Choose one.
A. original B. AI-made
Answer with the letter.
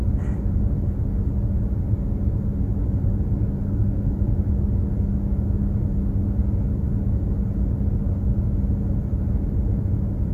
A